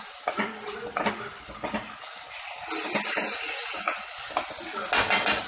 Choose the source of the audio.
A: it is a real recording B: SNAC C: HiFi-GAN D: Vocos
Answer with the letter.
A